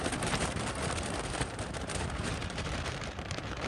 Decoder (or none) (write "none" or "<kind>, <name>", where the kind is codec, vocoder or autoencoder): vocoder, BigVGAN v2